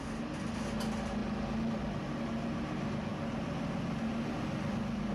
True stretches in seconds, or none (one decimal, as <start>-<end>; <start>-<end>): 0.0-5.1

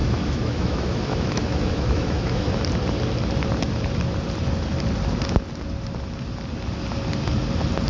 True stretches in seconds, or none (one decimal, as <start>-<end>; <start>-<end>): 2.6-7.9